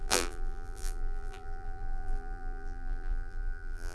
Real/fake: fake